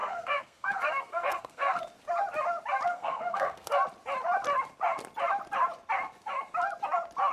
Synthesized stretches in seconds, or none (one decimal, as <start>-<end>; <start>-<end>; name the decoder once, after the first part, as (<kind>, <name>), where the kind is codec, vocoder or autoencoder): 0.0-1.8 (codec, SNAC); 2.9-3.7